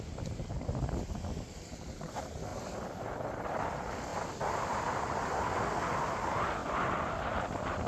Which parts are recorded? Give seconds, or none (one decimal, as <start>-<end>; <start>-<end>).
2.5-3.0; 4.1-5.8; 6.6-7.3